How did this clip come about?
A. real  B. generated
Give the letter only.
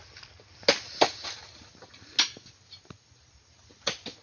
A